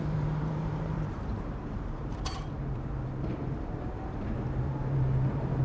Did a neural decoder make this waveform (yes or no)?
yes